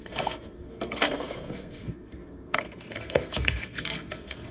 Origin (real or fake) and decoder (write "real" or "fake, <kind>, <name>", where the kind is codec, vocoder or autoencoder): fake, codec, SNAC